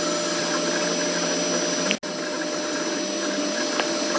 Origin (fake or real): real